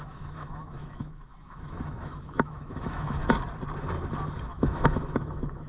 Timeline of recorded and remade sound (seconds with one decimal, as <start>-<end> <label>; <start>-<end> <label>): 0.0-3.2 remade; 3.2-4.4 recorded; 4.4-5.7 remade